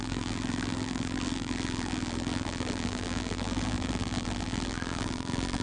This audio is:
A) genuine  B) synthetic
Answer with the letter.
B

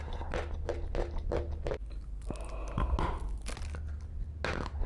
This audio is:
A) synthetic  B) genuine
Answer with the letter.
B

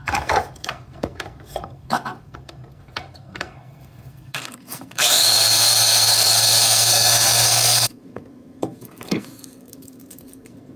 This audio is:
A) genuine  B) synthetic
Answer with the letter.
B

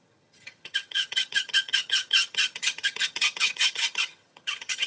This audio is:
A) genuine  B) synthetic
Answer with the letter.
B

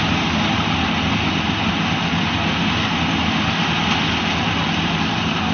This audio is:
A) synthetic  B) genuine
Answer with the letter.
B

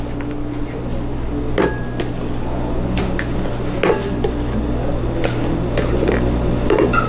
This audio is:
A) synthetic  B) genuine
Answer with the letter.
B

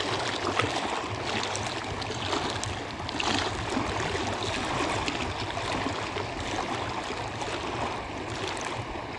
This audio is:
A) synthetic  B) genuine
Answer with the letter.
B